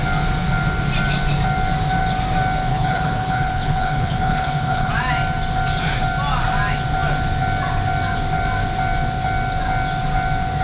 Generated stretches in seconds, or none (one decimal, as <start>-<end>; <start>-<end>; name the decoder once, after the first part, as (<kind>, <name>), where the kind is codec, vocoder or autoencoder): 2.7-4.9 (codec, HILCodec)